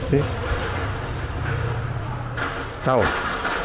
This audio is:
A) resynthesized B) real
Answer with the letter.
A